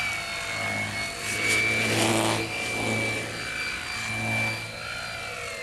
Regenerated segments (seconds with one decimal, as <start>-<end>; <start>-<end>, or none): none